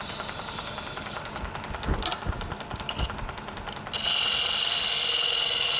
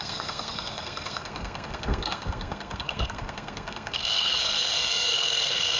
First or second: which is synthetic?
second